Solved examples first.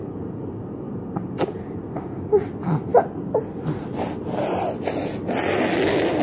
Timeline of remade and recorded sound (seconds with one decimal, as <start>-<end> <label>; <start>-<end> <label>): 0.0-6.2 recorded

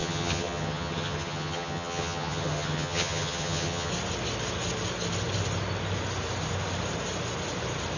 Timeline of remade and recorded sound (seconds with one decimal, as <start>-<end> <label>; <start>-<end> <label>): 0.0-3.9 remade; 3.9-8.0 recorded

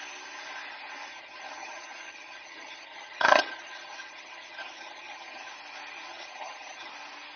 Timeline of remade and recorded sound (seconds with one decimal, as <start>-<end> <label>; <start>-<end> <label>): 0.0-1.1 recorded; 1.1-5.5 remade; 5.5-6.1 recorded; 6.1-6.9 remade; 6.9-7.4 recorded

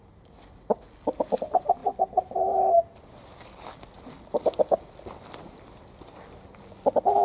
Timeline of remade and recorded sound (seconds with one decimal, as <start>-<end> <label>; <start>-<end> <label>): 0.0-7.2 recorded

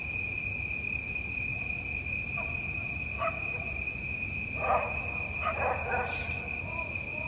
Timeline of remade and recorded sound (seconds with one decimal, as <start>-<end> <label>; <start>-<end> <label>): 0.0-7.3 recorded

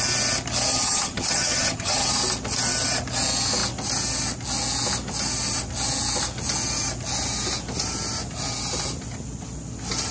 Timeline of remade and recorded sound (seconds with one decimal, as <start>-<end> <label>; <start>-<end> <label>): 0.0-0.7 recorded; 0.7-2.1 remade; 2.1-10.1 recorded